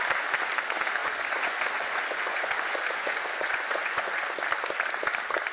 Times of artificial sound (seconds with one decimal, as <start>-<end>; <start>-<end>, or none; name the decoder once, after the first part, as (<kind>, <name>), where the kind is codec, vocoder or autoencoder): 1.0-4.3 (vocoder, Vocos)